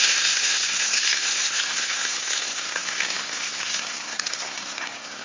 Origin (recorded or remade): remade